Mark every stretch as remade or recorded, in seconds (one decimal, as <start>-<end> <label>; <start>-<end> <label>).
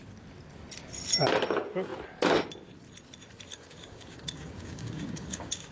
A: 0.0-3.5 recorded; 3.5-5.7 remade